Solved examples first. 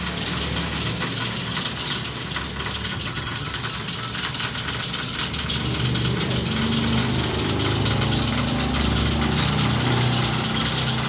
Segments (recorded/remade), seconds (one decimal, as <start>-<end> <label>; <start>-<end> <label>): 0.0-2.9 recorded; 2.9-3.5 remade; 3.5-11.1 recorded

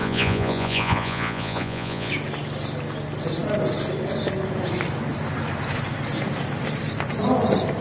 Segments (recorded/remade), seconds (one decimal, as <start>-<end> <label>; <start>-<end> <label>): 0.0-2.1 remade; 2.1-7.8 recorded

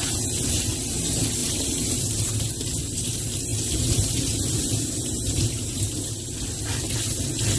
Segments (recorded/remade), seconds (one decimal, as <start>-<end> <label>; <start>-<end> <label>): 0.0-1.4 recorded; 1.4-2.3 remade; 2.3-3.5 recorded; 3.5-6.1 remade; 6.1-7.6 recorded

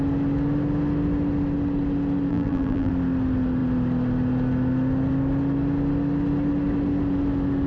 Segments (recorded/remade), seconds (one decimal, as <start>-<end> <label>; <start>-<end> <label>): 0.0-2.3 recorded; 2.3-2.9 remade; 2.9-7.7 recorded

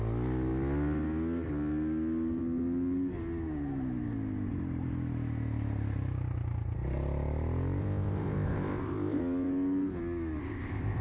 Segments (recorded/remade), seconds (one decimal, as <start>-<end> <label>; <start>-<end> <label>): 0.0-7.8 recorded; 7.8-9.2 remade; 9.2-10.4 recorded; 10.4-11.0 remade